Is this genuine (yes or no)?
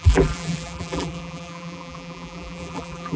no